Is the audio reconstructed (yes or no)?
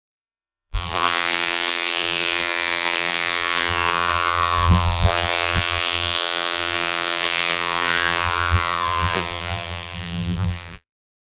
yes